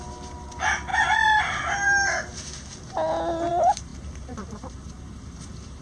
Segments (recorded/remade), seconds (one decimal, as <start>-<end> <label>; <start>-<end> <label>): 0.0-0.9 remade; 0.9-1.4 recorded; 1.4-2.3 remade; 2.3-3.5 recorded; 3.5-5.8 remade